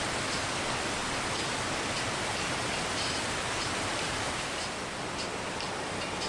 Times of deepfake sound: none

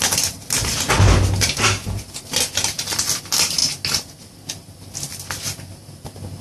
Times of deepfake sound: none

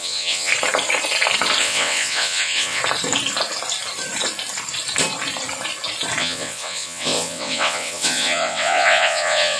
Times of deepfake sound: 0.0-0.5 (vocoder, WaveNeXt); 1.6-2.8; 6.2-9.6

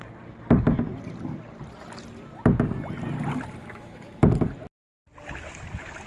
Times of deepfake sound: 3.6-4.2 (autoencoder, DAC-VAE)

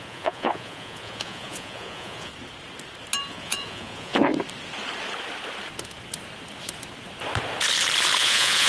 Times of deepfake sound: 0.0-2.3 (vocoder, Vocos); 3.3-4.3; 8.2-8.7